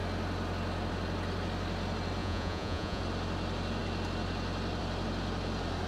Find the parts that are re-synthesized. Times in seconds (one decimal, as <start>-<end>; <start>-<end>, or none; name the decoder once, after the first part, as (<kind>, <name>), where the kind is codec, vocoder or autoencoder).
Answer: 2.2-3.0 (vocoder, Vocos)